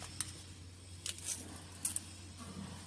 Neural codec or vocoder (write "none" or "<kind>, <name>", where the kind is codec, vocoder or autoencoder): none